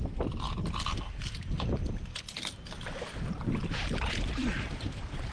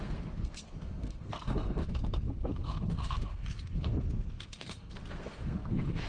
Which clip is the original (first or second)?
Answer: first